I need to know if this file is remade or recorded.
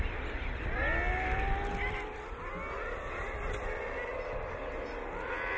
recorded